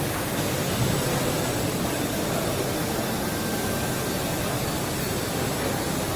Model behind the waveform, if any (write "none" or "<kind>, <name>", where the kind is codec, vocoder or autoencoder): none